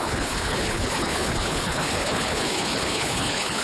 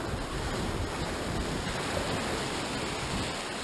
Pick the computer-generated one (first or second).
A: first